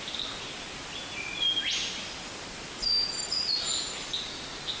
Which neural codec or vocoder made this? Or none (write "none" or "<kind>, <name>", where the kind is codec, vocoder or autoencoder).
none